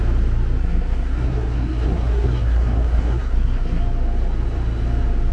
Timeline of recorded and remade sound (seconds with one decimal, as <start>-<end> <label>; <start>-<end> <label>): 0.0-0.6 recorded; 0.6-3.8 remade; 3.8-5.3 recorded